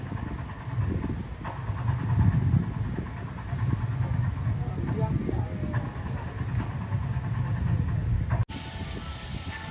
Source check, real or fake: real